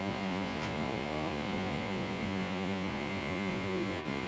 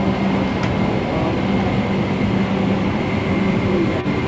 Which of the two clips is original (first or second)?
second